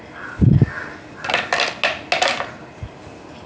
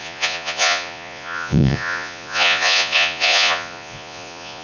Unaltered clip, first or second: first